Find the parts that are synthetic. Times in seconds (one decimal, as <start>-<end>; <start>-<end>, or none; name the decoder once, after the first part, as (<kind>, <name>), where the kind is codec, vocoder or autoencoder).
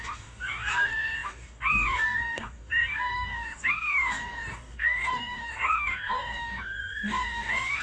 0.0-7.8 (codec, DAC)